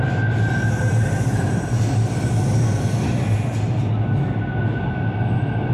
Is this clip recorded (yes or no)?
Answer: yes